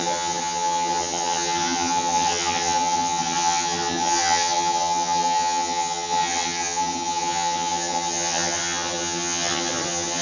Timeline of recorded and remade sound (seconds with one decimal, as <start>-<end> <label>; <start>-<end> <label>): 0.0-10.2 remade